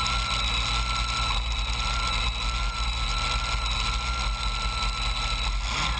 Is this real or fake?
real